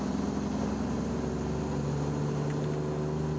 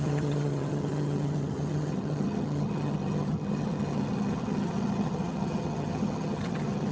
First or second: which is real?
first